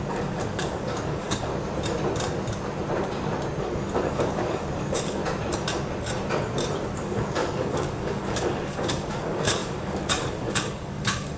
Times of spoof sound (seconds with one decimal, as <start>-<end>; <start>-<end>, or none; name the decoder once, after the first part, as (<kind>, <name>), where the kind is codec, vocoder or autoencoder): 0.0-1.5 (codec, DAC); 3.6-5.2; 7.0-11.4